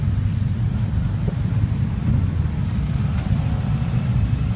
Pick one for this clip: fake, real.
real